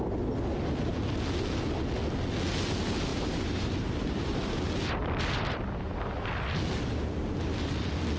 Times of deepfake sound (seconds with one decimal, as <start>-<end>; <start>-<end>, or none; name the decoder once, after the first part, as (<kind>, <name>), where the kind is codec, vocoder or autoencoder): 3.1-4.5 (vocoder, BigVGAN v2)